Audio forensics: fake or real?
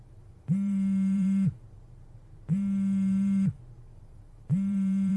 fake